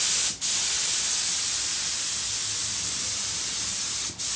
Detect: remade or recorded recorded